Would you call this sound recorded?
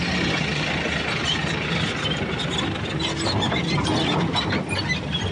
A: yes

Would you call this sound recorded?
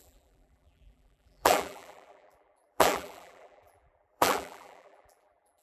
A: no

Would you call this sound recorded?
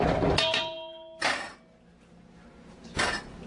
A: yes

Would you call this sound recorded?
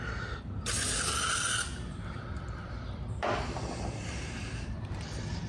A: no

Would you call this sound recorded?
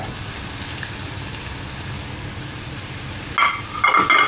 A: yes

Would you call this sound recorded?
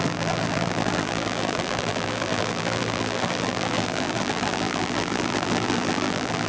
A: no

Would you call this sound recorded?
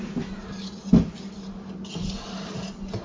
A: yes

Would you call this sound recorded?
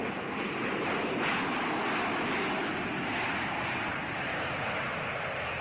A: yes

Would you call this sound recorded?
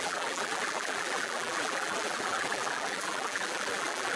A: no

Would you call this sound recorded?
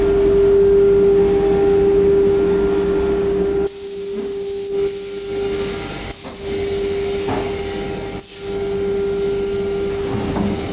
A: yes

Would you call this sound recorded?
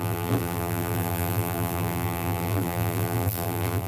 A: no